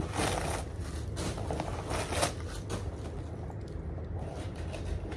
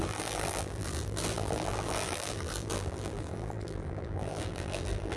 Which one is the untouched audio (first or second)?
first